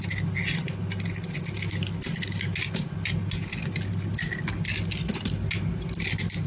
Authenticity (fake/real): real